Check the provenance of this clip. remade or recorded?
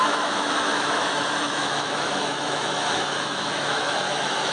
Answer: remade